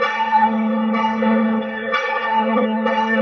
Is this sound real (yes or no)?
no